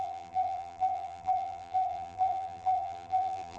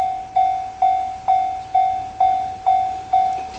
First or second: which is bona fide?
second